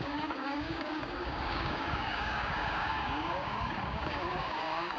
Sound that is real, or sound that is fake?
fake